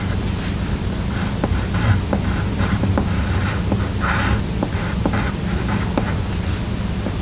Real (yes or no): yes